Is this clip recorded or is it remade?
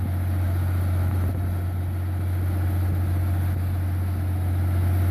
recorded